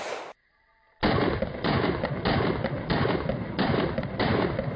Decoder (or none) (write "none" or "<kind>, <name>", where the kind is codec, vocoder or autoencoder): none